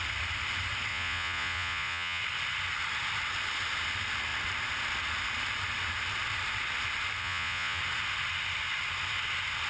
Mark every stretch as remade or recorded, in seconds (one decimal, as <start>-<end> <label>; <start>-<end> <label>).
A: 0.0-0.9 recorded; 0.9-2.2 remade; 2.2-7.2 recorded; 7.2-7.8 remade; 7.8-9.7 recorded